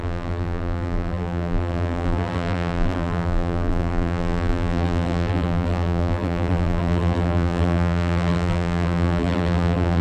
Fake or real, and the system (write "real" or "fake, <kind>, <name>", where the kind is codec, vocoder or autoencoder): fake, vocoder, BigVGAN v2